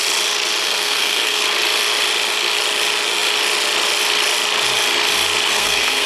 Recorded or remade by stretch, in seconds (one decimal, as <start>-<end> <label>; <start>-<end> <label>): 0.0-0.6 recorded; 0.6-1.4 remade; 1.4-5.5 recorded; 5.5-6.1 remade